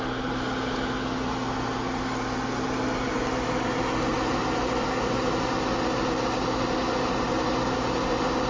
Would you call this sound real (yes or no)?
yes